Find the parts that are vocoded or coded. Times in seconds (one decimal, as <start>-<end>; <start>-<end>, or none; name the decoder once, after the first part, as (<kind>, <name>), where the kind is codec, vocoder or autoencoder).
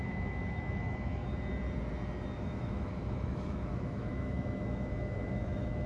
0.0-1.2 (autoencoder, DAC-VAE); 2.4-5.9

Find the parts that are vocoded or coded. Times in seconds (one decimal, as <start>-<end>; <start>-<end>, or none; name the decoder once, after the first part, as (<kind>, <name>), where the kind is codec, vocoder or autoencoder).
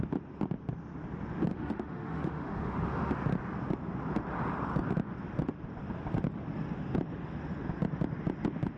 1.5-3.1 (autoencoder, DAC-VAE)